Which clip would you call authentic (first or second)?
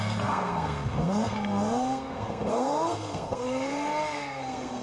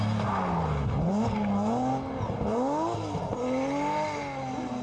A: second